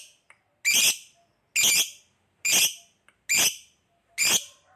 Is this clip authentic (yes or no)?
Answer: yes